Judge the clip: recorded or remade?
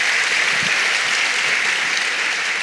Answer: recorded